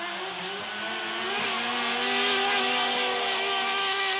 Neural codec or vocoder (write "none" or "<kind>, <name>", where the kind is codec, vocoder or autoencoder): none